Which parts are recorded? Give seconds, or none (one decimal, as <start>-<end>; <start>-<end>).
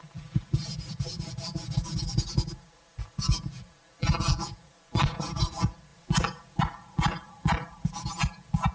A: 5.9-6.6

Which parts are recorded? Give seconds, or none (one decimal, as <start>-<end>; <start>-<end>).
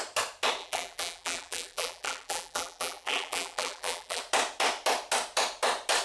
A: 0.0-0.6; 4.2-6.0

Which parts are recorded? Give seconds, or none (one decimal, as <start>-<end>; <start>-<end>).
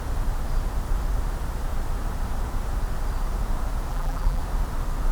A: 0.0-3.9; 4.4-5.1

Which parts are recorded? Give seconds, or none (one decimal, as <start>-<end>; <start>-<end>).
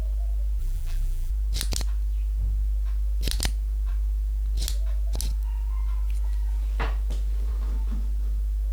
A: 0.0-0.6; 1.3-8.7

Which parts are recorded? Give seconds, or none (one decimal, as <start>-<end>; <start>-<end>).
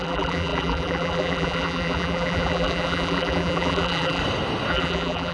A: 4.2-4.7